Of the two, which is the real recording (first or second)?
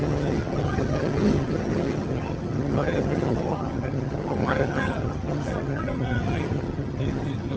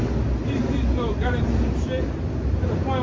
second